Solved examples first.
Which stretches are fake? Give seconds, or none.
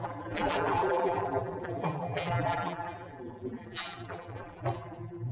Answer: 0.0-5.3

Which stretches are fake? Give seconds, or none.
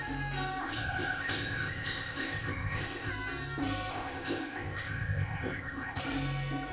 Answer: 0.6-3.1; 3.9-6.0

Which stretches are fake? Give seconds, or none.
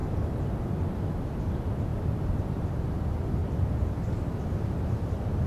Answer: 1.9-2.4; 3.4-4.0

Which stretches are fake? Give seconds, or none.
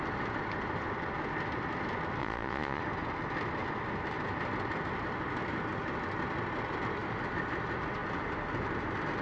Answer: 2.2-2.8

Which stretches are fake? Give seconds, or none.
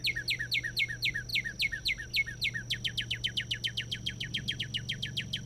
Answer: none